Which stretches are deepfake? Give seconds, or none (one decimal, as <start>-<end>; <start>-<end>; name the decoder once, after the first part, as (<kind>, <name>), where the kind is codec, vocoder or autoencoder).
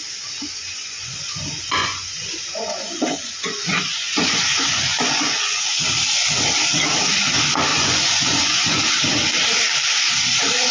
0.5-5.7 (vocoder, Vocos); 7.7-8.8